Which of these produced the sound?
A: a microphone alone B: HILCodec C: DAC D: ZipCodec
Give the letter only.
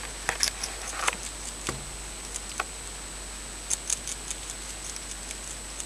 A